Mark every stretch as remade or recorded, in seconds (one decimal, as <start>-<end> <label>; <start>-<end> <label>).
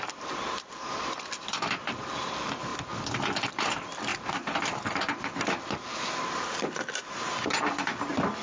0.0-2.7 remade; 2.7-3.5 recorded; 3.5-4.1 remade; 4.1-7.6 recorded; 7.6-8.4 remade